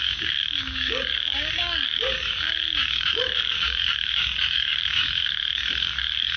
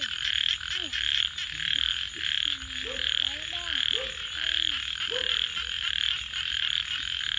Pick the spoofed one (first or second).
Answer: first